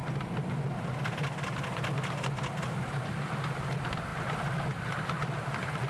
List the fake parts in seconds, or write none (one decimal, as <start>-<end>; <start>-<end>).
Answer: none